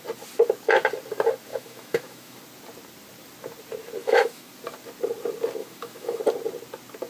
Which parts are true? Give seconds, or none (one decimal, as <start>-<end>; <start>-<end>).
0.0-1.5; 2.4-4.0; 4.5-5.6; 6.2-7.1